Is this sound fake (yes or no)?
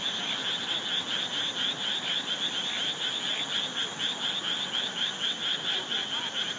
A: no